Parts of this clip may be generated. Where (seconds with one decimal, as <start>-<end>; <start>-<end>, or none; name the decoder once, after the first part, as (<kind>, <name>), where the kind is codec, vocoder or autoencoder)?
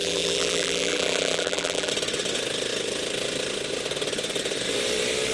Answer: 0.0-1.9 (vocoder, BigVGAN v2)